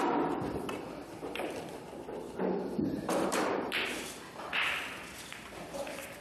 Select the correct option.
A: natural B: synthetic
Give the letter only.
B